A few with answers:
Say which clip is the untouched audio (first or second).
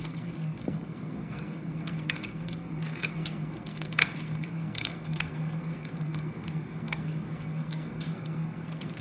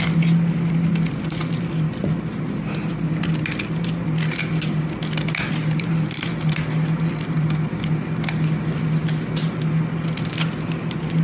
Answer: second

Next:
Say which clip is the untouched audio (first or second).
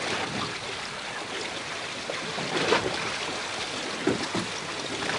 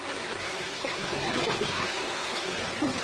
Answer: first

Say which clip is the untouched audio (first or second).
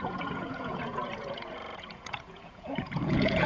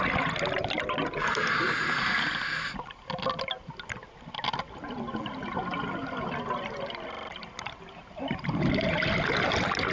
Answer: second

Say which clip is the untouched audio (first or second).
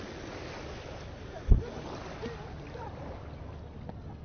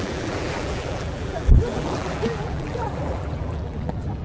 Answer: first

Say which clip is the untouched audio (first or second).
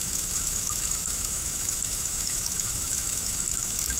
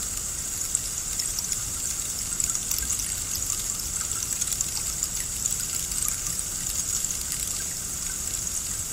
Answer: second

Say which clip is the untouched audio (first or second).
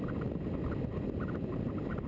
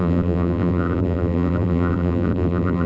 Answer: first